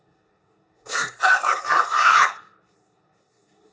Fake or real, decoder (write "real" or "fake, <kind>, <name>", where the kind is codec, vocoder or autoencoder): fake, codec, SNAC